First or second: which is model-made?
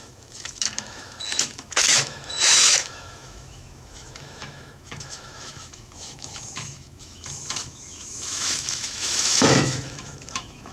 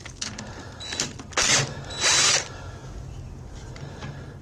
first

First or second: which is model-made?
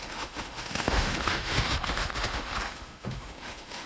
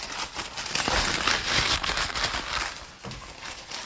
first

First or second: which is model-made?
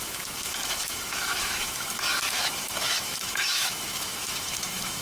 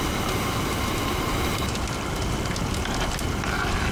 first